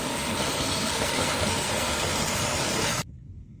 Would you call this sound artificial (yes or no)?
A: yes